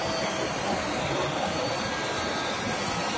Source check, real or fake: real